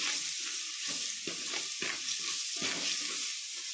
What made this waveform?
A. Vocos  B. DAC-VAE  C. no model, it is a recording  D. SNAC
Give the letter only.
C